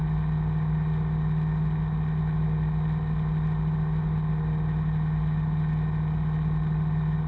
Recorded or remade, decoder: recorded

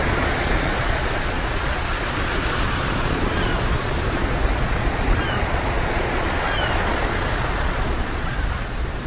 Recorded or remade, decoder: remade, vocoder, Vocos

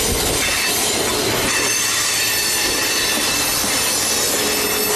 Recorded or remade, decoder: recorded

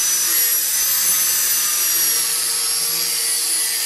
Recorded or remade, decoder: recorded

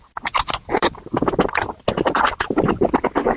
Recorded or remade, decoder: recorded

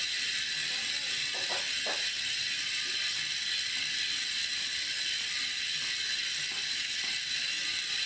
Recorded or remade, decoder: recorded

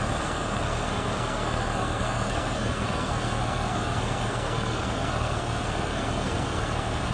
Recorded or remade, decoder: remade, codec, SNAC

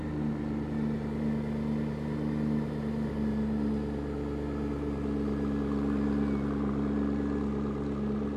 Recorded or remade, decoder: recorded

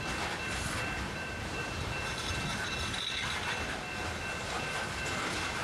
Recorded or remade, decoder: recorded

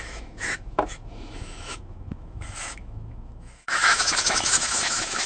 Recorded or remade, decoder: remade, autoencoder, DAC-VAE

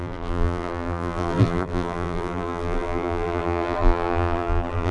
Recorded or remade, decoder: remade, vocoder, BigVGAN v2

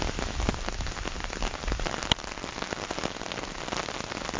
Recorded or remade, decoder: recorded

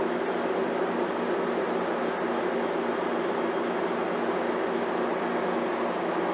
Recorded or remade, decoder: recorded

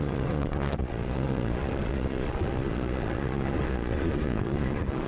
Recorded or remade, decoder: remade, vocoder, Vocos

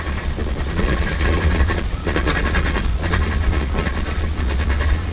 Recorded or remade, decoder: remade, vocoder, Vocos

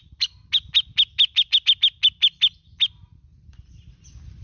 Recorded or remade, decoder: recorded